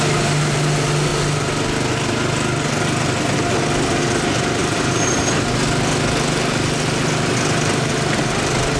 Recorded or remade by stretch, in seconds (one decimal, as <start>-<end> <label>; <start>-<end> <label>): 0.0-4.6 recorded; 4.6-5.2 remade; 5.2-8.8 recorded